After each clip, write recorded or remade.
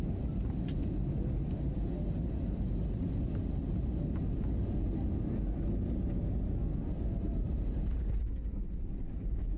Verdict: recorded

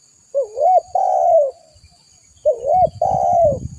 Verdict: recorded